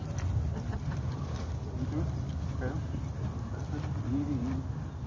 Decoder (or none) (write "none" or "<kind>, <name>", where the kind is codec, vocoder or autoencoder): none